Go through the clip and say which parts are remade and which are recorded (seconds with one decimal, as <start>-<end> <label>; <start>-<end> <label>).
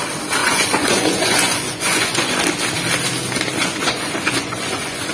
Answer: 0.0-0.4 recorded; 0.4-2.4 remade; 2.4-3.6 recorded; 3.6-5.1 remade